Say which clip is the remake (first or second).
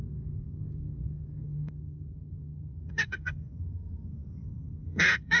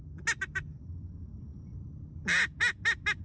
first